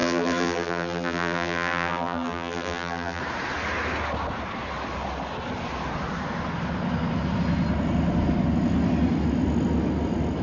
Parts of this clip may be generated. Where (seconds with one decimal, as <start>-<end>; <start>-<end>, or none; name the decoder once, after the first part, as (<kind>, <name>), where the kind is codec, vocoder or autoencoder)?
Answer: 0.0-3.2 (vocoder, BigVGAN v2)